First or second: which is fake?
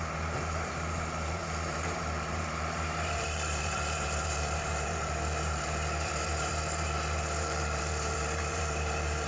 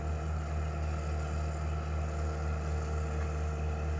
first